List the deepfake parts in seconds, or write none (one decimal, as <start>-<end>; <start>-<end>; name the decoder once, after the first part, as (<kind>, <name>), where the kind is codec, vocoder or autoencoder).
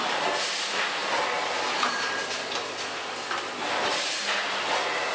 none